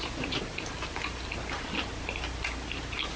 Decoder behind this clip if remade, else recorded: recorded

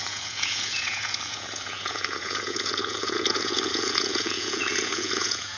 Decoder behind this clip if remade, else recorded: remade, vocoder, Vocos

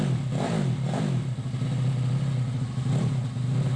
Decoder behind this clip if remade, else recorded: recorded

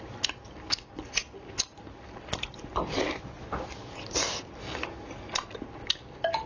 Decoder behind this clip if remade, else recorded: recorded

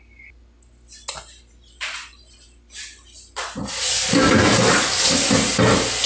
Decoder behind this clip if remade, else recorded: recorded